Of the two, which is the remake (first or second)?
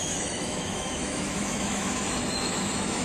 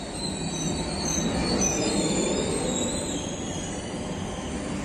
first